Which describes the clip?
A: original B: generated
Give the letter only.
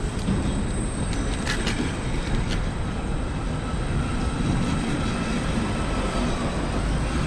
A